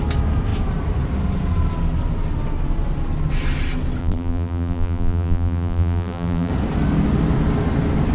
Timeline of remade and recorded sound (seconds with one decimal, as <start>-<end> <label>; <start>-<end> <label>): 0.0-4.0 recorded; 4.0-6.5 remade; 6.5-8.1 recorded